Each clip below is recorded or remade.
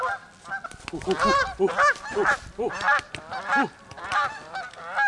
recorded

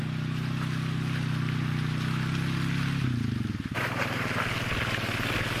recorded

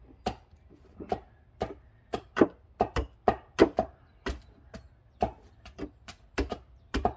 recorded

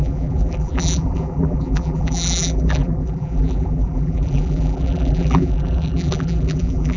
remade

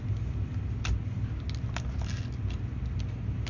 recorded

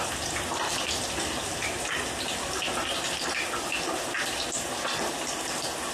recorded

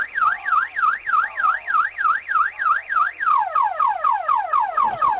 recorded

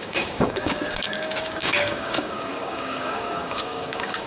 remade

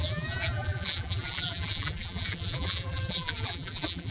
remade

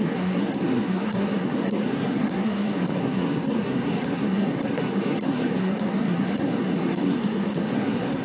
remade